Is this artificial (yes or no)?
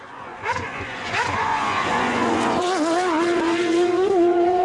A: yes